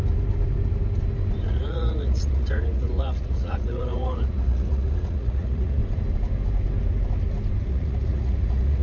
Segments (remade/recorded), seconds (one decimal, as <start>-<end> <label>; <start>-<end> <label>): 0.0-1.5 recorded; 1.5-5.8 remade; 5.8-7.6 recorded; 7.6-8.8 remade